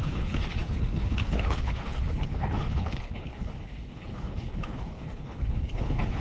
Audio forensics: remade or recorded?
remade